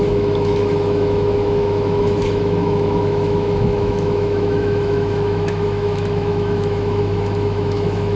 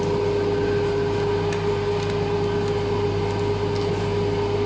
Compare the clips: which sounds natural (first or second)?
second